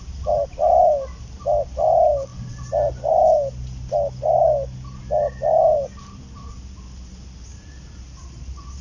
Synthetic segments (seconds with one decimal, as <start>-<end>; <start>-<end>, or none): none